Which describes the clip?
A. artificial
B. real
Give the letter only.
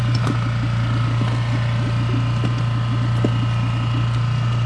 B